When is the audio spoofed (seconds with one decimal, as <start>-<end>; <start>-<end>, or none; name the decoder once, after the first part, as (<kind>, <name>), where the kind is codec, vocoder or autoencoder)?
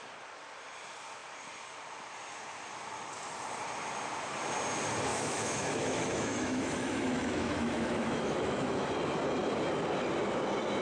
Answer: 5.1-8.9 (autoencoder, DAC-VAE)